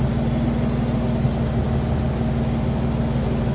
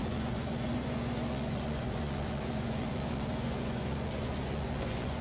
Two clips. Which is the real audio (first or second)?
first